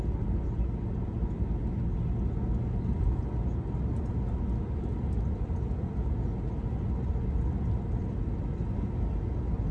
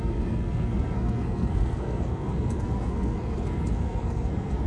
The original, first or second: first